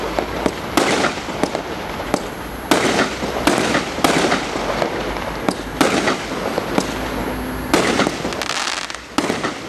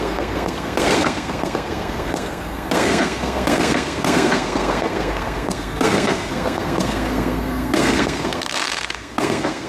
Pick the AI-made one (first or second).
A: second